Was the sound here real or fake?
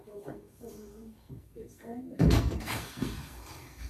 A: fake